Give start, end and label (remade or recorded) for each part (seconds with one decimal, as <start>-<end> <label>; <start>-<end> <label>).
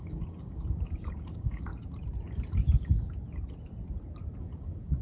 0.0-1.7 remade; 1.7-4.4 recorded; 4.4-5.0 remade